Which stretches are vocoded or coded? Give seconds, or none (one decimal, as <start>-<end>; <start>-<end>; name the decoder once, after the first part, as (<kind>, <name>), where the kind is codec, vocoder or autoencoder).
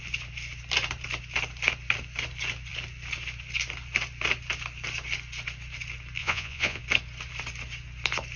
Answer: 6.2-6.8 (vocoder, Vocos)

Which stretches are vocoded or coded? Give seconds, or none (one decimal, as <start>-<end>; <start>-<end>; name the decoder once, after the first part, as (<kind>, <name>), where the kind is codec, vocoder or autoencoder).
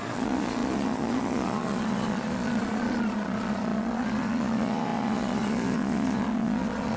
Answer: 0.0-7.0 (vocoder, Vocos)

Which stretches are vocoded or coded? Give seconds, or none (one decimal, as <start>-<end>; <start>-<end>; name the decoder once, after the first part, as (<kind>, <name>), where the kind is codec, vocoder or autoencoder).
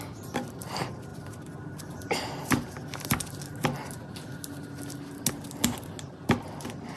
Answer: none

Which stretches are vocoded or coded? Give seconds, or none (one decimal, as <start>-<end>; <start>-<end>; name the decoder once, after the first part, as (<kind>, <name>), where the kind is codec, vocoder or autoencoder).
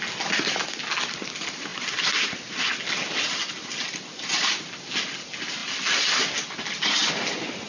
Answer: none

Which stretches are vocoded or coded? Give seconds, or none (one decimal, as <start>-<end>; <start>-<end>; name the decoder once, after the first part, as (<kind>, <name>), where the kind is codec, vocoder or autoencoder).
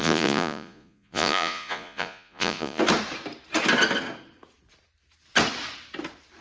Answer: 0.0-2.8 (vocoder, Vocos)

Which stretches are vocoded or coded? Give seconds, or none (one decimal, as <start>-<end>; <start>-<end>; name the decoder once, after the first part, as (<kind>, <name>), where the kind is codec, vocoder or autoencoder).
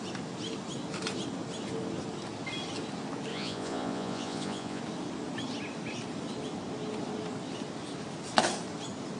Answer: 3.3-4.8 (vocoder, Vocos)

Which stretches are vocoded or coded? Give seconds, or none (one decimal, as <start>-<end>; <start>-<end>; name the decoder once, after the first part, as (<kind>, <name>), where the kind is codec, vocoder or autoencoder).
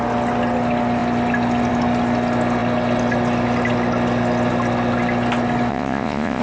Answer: 5.7-6.4 (vocoder, Vocos)